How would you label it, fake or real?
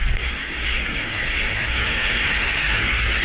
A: fake